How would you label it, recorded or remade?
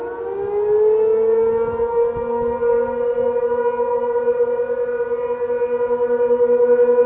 recorded